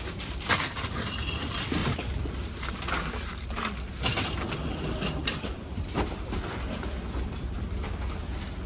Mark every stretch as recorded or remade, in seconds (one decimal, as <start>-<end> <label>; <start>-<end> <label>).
0.0-1.8 remade; 1.8-2.7 recorded; 2.7-8.7 remade

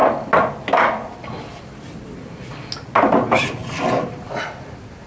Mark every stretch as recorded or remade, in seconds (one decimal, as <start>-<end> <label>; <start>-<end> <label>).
0.0-5.1 recorded

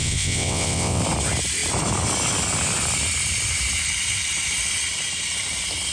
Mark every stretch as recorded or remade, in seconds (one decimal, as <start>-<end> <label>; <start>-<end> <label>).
0.0-1.0 remade; 1.0-5.9 recorded

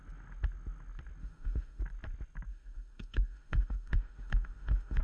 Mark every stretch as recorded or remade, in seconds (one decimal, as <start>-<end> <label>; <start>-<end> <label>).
0.0-1.2 recorded; 1.2-1.8 remade; 1.8-2.5 recorded; 2.5-5.0 remade

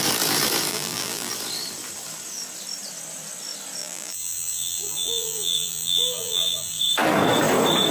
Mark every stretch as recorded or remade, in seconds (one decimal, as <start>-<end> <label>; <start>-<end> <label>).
0.0-0.7 recorded; 0.7-1.3 remade; 1.3-3.8 recorded; 3.8-6.8 remade; 6.8-7.9 recorded